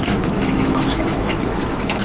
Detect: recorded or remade remade